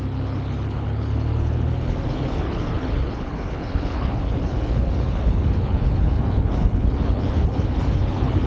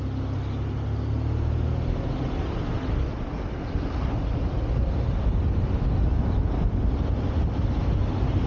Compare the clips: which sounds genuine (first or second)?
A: second